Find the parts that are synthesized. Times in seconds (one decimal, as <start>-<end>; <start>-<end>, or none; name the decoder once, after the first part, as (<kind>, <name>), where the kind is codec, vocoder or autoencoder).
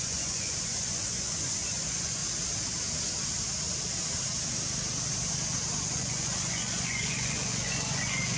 0.0-2.2 (vocoder, Vocos); 5.9-8.4